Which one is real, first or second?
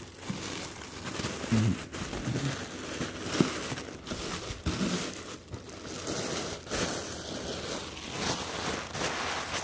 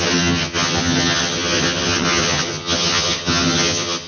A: first